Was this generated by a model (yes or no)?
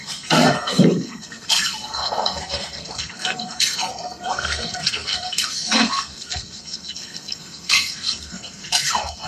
yes